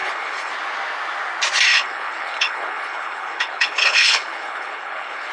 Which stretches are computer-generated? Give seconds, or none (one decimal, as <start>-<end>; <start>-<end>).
0.0-0.5; 1.7-5.3

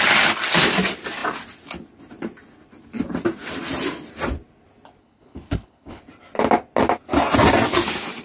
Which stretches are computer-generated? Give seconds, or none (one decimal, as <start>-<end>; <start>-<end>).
5.0-6.0